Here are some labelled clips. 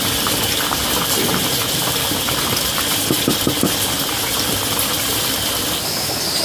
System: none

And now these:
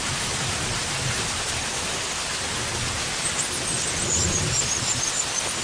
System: none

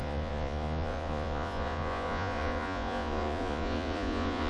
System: vocoder, Vocos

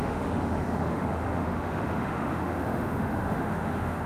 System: autoencoder, DAC-VAE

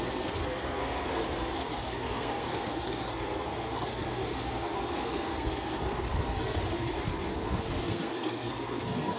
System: codec, SNAC